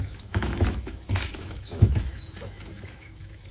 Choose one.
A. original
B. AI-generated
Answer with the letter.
B